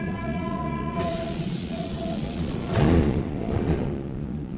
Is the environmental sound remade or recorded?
remade